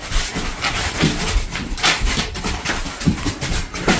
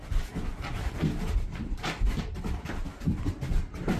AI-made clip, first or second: first